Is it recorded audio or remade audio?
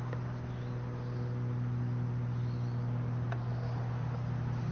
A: recorded